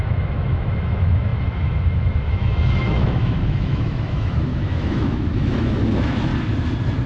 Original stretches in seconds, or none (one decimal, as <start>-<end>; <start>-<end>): 6.3-7.1